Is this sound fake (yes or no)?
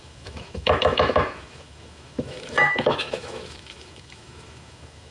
yes